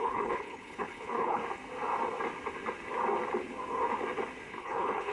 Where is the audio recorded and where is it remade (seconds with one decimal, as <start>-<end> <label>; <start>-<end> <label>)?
0.0-1.4 remade; 1.4-4.5 recorded; 4.5-5.1 remade